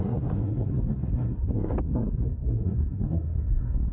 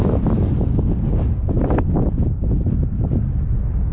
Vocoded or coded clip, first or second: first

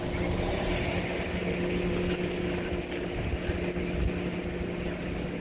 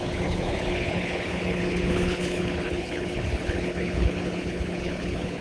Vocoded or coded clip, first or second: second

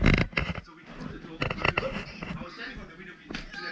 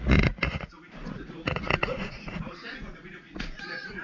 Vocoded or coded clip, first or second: second